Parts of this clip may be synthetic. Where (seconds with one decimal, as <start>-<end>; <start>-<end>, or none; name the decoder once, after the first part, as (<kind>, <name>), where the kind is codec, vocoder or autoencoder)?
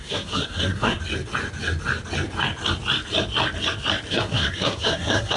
0.0-1.0 (codec, SNAC); 4.1-5.4